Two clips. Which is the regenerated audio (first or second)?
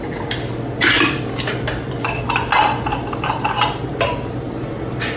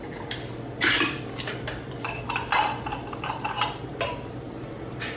second